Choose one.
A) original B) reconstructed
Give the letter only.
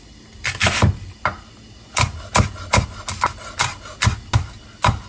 A